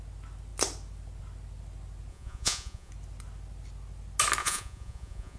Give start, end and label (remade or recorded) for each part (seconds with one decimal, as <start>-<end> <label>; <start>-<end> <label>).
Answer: 0.0-2.1 recorded; 2.1-2.9 remade; 2.9-4.4 recorded; 4.4-5.4 remade